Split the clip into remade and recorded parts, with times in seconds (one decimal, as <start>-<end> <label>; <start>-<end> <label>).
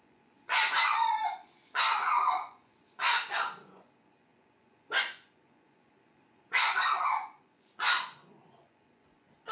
0.0-9.5 remade